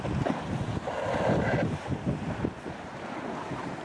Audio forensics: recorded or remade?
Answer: recorded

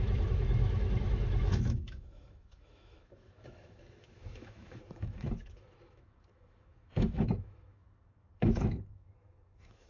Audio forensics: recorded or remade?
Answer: remade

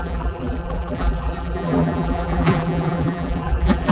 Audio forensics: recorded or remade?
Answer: remade